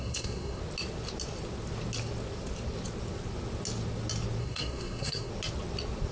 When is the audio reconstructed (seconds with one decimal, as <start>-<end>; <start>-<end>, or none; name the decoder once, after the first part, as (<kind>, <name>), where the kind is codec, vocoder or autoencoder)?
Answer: 0.0-0.6 (codec, SNAC); 4.4-5.3